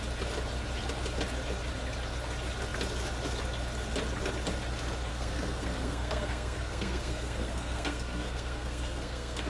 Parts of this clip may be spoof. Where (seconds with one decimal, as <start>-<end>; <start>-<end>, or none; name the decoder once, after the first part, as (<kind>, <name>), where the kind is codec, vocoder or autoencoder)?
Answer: 5.1-9.5 (codec, SNAC)